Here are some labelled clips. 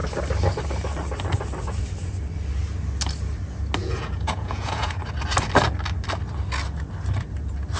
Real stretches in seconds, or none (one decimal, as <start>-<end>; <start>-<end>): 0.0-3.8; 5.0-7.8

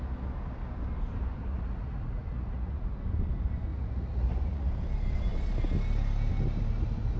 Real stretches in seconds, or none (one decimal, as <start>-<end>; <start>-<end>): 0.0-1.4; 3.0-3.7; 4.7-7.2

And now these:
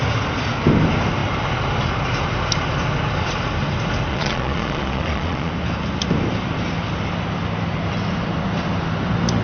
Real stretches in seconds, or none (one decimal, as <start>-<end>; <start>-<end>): 0.0-4.1; 5.5-9.4

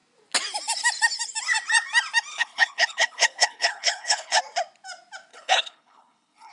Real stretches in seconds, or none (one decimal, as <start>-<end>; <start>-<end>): 0.0-2.3; 4.4-5.3

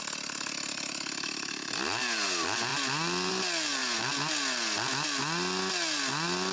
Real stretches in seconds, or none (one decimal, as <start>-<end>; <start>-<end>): 0.0-6.5